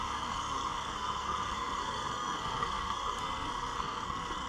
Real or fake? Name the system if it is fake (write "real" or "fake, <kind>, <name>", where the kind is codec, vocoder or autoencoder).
fake, codec, SNAC